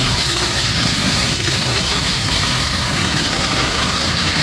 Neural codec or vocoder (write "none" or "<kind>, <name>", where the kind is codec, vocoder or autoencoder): codec, SNAC